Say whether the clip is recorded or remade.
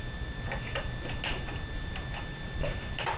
recorded